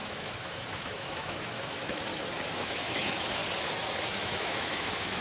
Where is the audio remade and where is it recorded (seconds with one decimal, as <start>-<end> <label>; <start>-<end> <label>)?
0.0-2.1 remade; 2.1-2.6 recorded; 2.6-3.4 remade; 3.4-4.1 recorded; 4.1-5.2 remade